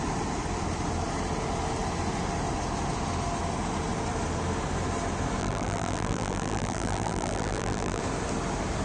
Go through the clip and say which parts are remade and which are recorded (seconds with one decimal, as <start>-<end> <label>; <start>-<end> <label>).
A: 0.0-5.4 recorded; 5.4-8.0 remade; 8.0-8.8 recorded